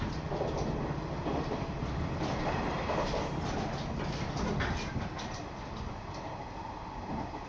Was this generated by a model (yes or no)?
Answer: no